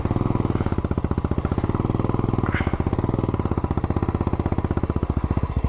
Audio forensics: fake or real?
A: real